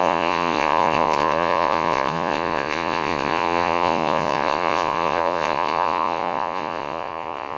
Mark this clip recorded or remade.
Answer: remade